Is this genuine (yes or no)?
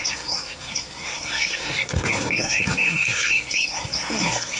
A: no